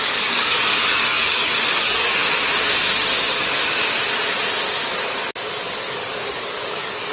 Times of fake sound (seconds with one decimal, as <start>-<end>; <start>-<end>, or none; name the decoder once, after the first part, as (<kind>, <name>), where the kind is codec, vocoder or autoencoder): 0.0-2.2 (codec, DAC); 5.7-7.1